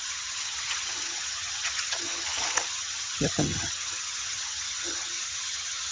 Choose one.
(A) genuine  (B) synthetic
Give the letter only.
B